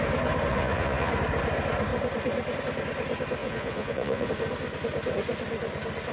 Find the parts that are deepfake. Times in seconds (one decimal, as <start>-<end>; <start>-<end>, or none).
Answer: 0.5-1.1; 3.4-4.3